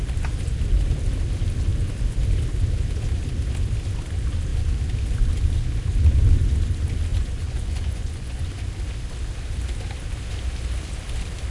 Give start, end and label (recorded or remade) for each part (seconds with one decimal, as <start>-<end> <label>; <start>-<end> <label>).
0.0-7.1 recorded; 7.1-8.4 remade; 8.4-11.5 recorded